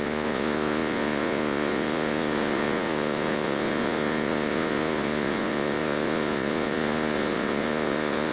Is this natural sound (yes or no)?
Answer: no